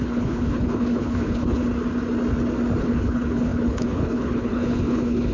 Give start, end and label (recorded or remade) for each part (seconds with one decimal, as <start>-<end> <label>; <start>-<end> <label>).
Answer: 0.0-1.6 remade; 1.6-2.8 recorded; 2.8-5.3 remade